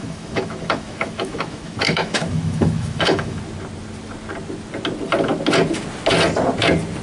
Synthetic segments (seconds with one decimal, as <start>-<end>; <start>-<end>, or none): 0.0-3.4